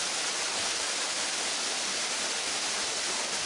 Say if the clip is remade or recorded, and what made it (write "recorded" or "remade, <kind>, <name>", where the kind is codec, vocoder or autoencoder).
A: recorded